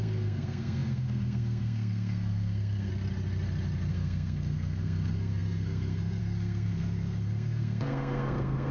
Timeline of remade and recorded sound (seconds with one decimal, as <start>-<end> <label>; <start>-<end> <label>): 0.0-2.9 remade; 2.9-3.9 recorded; 3.9-8.7 remade